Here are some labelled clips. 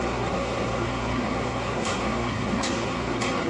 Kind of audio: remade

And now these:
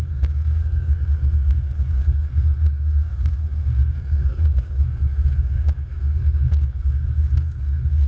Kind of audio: remade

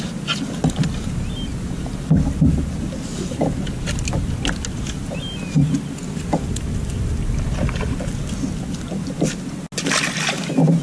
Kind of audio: recorded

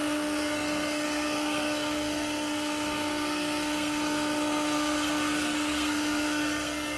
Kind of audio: remade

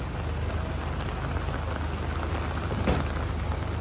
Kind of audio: recorded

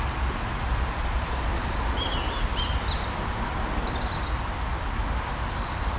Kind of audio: recorded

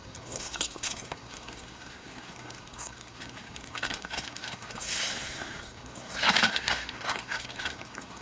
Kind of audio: remade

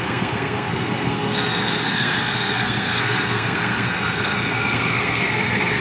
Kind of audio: remade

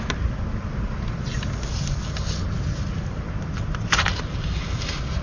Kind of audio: recorded